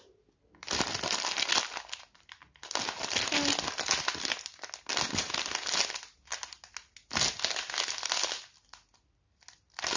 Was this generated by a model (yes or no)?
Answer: no